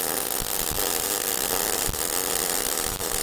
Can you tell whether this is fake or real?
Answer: real